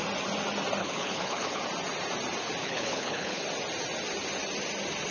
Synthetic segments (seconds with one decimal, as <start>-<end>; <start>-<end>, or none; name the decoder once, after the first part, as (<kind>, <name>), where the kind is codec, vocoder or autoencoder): 0.8-1.6 (codec, HILCodec); 2.6-3.4